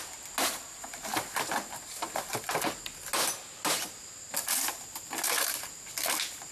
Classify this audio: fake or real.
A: real